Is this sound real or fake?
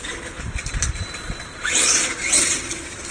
real